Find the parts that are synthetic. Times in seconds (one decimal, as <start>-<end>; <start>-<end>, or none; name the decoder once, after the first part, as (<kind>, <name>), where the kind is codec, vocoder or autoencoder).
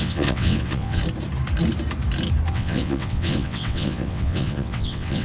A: 0.0-1.0 (vocoder, WaveNeXt); 2.5-5.2